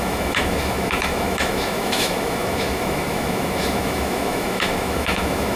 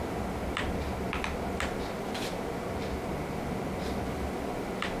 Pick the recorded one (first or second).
second